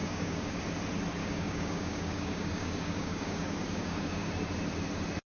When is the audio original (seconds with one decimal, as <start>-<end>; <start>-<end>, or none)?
0.6-1.2; 4.3-5.3

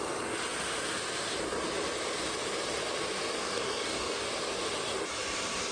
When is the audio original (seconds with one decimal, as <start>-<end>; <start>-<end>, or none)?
0.0-3.4; 4.2-5.7